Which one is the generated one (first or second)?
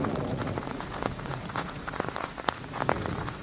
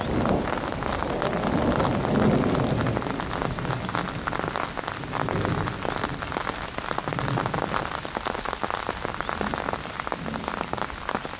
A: first